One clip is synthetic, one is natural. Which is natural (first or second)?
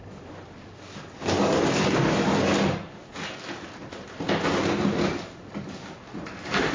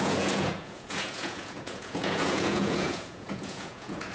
first